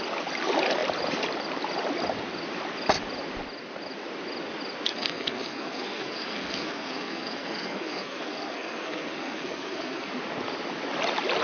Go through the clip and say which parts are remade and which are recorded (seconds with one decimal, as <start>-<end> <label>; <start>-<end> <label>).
0.0-4.9 recorded; 4.9-10.1 remade; 10.1-11.4 recorded